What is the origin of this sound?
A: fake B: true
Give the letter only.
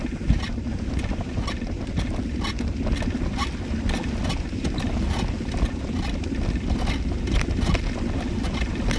B